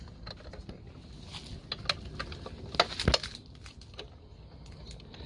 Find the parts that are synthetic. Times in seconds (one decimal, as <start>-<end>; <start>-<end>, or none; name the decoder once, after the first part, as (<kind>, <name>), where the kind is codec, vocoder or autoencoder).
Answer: none